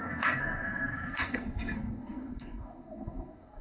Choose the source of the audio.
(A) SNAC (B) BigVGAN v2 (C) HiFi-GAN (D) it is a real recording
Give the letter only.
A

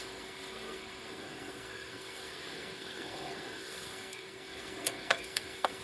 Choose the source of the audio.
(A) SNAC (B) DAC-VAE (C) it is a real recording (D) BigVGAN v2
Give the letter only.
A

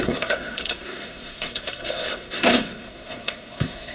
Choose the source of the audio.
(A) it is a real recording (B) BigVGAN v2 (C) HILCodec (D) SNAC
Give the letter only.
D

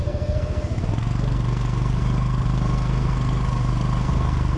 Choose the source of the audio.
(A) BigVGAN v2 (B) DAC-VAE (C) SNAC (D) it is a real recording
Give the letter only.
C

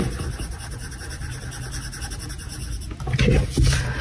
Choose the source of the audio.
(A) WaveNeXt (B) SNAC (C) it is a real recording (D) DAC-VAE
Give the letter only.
C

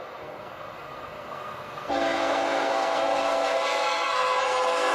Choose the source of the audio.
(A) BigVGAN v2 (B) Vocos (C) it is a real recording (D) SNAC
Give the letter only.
D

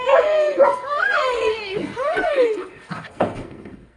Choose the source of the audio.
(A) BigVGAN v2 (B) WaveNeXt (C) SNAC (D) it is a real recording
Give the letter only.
C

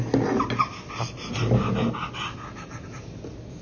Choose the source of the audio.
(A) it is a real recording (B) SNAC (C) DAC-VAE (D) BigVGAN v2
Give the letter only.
A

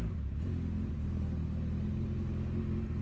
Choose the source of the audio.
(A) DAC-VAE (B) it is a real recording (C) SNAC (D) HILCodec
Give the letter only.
B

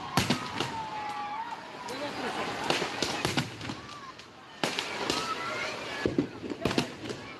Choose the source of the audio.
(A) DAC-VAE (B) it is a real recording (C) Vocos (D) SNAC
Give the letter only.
B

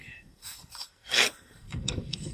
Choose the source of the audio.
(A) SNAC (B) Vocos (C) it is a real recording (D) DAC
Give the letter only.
A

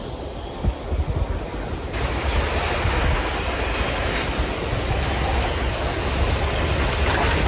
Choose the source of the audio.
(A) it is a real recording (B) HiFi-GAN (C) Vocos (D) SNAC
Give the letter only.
A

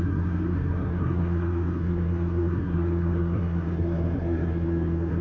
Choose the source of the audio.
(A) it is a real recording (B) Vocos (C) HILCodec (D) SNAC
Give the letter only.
D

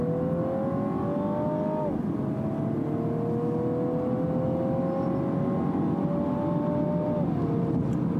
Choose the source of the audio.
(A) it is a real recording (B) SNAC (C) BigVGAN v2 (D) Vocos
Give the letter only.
A